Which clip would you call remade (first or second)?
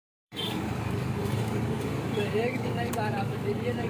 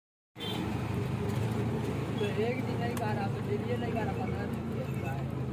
first